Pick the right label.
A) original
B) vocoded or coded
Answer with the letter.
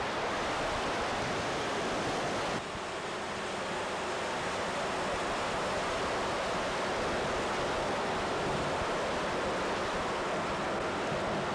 A